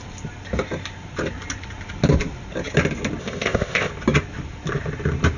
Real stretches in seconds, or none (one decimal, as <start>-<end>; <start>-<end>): 0.0-3.2; 3.9-5.4